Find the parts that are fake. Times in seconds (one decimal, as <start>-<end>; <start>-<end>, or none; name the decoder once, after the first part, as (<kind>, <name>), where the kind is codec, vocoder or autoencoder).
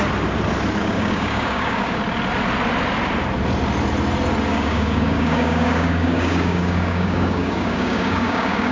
0.8-2.0 (codec, DAC); 4.5-8.7